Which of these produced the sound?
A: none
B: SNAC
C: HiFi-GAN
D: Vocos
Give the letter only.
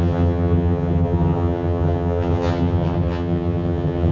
C